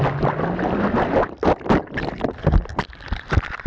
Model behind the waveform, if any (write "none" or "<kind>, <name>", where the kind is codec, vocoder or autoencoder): none